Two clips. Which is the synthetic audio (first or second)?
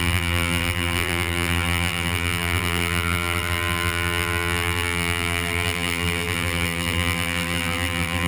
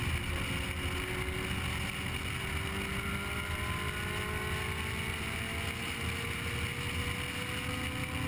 first